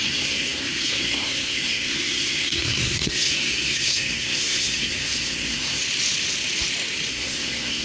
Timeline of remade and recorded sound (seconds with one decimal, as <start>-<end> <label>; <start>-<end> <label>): 0.0-5.8 remade; 5.8-7.1 recorded; 7.1-7.8 remade